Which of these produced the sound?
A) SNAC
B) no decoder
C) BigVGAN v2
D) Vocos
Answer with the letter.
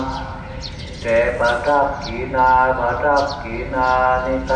B